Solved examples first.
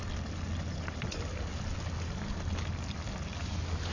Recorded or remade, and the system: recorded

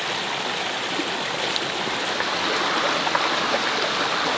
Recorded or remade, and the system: recorded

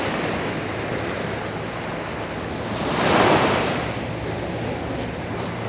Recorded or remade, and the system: recorded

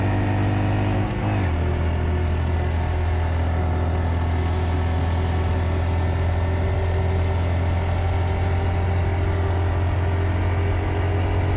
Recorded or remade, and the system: recorded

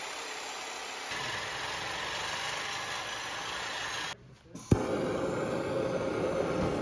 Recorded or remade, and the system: recorded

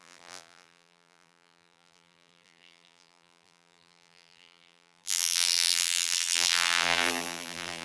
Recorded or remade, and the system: remade, vocoder, BigVGAN v2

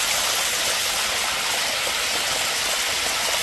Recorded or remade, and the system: recorded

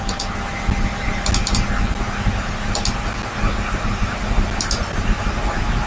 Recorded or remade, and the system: recorded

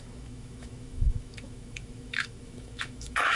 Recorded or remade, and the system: remade, autoencoder, DAC-VAE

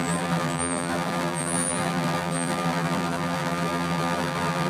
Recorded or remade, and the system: remade, vocoder, BigVGAN v2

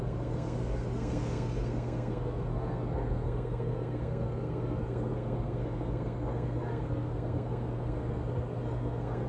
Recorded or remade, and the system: remade, codec, SNAC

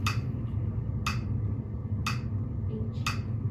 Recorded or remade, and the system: recorded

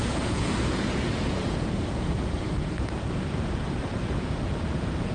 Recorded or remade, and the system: remade, vocoder, Vocos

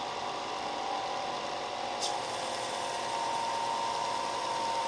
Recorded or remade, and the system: recorded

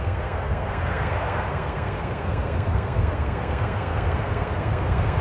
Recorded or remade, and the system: remade, codec, SNAC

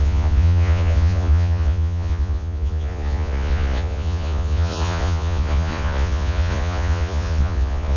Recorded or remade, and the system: remade, vocoder, Vocos